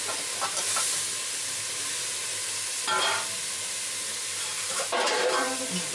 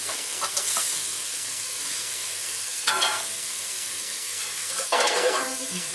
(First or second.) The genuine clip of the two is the first